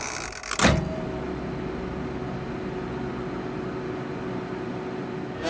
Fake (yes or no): no